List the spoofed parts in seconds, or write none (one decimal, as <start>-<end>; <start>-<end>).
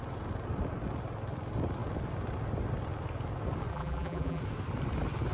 3.7-4.4